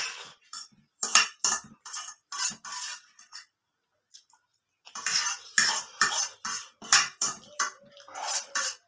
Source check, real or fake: fake